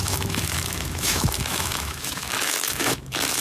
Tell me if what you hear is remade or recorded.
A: remade